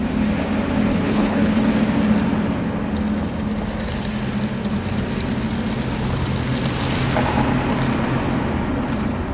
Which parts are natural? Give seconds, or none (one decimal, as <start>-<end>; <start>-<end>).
0.0-0.9; 1.6-9.3